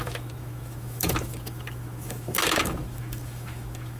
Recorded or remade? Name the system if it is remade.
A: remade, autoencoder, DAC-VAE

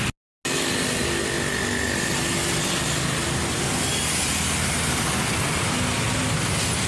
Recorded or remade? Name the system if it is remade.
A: recorded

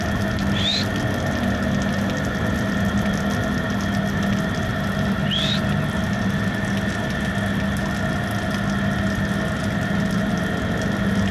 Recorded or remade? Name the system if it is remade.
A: recorded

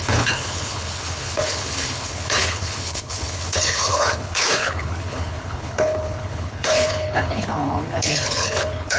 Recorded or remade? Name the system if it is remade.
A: remade, codec, HILCodec